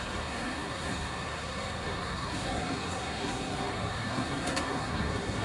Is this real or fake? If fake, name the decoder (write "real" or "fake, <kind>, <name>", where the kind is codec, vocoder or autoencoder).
fake, codec, SNAC